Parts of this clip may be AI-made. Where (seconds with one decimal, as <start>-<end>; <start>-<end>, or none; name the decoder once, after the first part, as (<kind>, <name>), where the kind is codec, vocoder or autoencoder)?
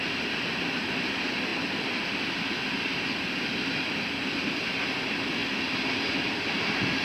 none